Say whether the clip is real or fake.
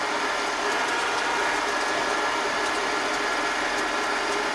real